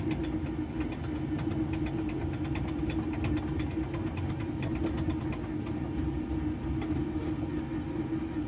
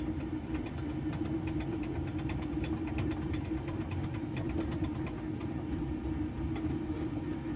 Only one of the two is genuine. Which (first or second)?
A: first